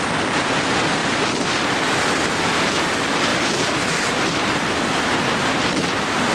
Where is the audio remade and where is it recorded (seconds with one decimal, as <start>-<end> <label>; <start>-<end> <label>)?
0.0-1.0 recorded; 1.0-2.4 remade; 2.4-3.3 recorded; 3.3-6.3 remade